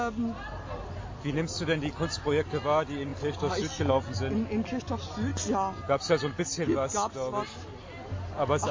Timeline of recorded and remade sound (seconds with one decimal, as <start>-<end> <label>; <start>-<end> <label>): 0.0-8.7 recorded